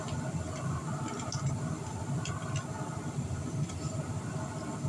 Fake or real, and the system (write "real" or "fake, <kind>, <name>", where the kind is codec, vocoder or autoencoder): real